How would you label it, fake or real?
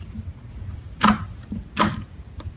real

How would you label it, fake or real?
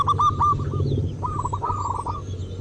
real